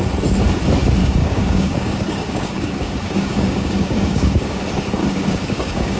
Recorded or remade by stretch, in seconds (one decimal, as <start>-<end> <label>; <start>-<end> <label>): 0.0-1.0 recorded; 1.0-4.6 remade; 4.6-5.0 recorded; 5.0-6.0 remade